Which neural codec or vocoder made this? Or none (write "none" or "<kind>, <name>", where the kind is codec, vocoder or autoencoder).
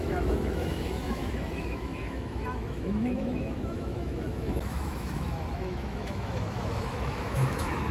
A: autoencoder, DAC-VAE